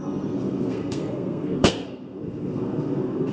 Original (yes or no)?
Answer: no